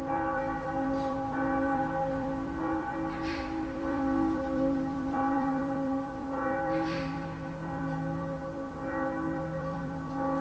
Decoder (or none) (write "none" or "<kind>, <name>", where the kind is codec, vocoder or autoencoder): vocoder, BigVGAN v2